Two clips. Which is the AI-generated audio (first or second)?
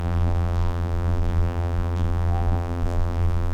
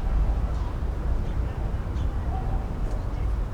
first